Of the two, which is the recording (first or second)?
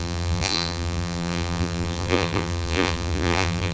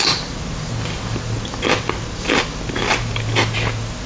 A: second